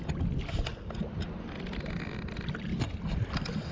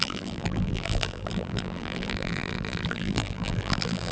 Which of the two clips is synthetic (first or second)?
second